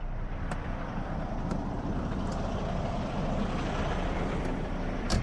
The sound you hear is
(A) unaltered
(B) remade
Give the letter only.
B